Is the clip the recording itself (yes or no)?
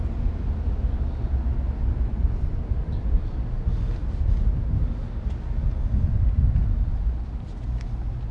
yes